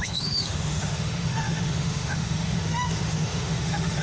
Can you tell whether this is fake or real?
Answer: fake